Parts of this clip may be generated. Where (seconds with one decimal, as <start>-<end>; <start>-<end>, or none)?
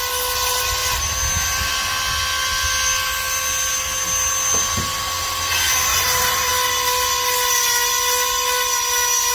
5.9-6.5